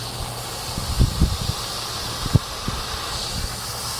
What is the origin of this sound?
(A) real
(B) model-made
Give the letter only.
A